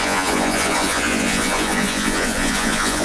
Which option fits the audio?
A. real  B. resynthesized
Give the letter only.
B